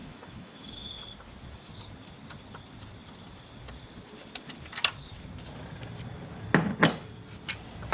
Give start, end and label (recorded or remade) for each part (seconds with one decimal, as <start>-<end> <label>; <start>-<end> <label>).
0.0-0.9 remade; 0.9-7.9 recorded